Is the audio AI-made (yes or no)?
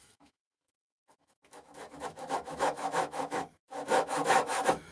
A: yes